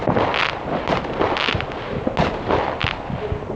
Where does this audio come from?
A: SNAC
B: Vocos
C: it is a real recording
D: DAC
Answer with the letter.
C